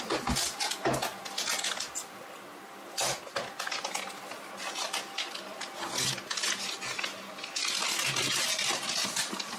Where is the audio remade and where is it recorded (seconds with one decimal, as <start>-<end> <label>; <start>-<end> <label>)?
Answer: 0.0-9.6 recorded